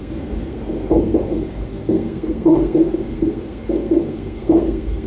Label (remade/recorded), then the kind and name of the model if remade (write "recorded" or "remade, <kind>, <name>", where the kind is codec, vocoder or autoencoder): remade, codec, SNAC